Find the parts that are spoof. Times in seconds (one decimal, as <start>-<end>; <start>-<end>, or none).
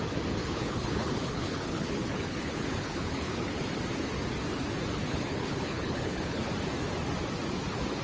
0.4-3.7; 5.0-6.5